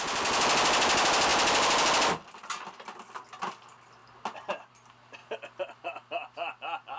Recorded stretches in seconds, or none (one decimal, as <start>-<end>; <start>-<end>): 0.0-7.0